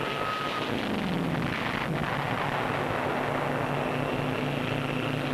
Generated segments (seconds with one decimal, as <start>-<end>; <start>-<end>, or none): none